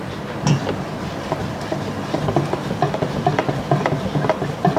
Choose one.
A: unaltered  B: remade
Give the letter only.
A